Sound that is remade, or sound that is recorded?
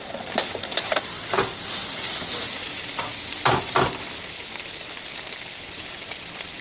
remade